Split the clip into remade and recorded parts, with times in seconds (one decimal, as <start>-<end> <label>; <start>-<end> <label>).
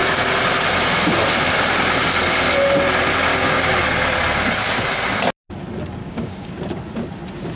0.0-3.3 recorded; 3.3-3.8 remade; 3.8-6.0 recorded; 6.0-6.5 remade; 6.5-7.5 recorded